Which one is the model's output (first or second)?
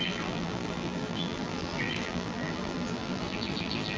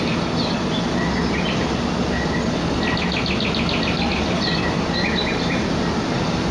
first